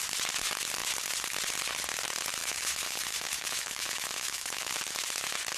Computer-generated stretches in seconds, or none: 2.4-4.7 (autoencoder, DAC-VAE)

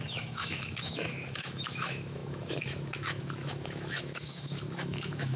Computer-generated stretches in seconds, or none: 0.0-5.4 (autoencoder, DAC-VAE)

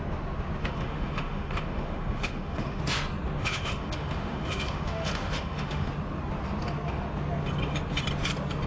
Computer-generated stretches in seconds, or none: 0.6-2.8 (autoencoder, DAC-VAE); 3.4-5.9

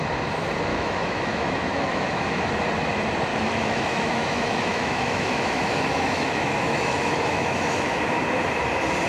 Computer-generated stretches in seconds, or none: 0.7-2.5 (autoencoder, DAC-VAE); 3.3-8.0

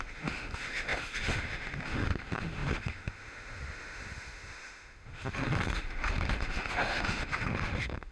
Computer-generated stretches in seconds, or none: 0.0-8.1 (autoencoder, DAC-VAE)

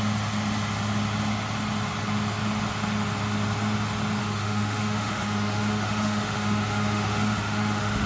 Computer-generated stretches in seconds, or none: 4.2-8.1 (autoencoder, DAC-VAE)